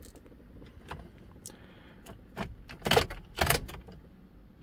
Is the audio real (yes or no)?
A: yes